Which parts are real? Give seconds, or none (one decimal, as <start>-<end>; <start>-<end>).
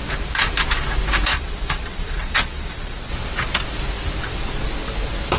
0.0-1.3; 3.1-5.4